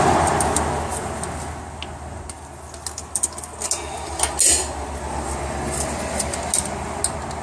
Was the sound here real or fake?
real